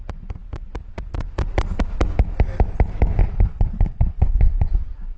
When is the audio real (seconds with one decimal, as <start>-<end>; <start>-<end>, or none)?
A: 0.4-3.2